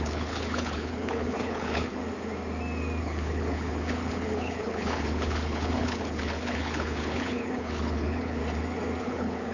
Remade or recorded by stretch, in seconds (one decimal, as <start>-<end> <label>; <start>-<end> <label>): 0.0-2.0 remade; 2.0-3.0 recorded; 3.0-8.4 remade; 8.4-9.0 recorded; 9.0-9.5 remade